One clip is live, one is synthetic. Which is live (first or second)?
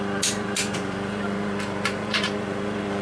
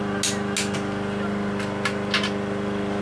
second